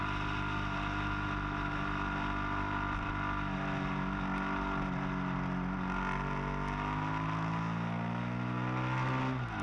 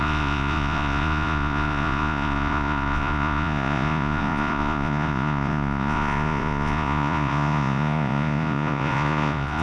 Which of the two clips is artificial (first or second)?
second